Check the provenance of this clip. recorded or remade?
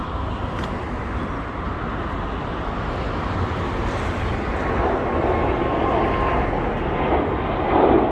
recorded